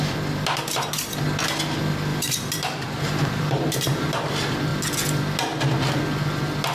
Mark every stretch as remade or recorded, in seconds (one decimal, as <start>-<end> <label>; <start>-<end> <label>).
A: 0.0-2.1 recorded; 2.1-4.3 remade; 4.3-6.7 recorded